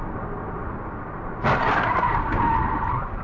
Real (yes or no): yes